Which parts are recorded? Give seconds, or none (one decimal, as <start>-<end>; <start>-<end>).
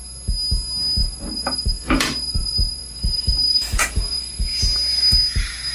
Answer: 0.0-1.0; 4.4-5.7